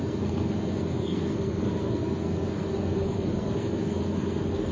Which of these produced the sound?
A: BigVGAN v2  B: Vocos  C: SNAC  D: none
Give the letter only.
C